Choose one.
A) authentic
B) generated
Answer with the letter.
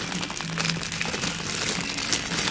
A